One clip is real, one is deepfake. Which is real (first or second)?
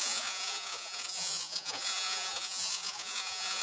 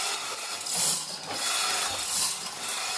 second